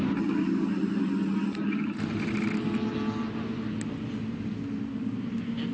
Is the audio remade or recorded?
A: recorded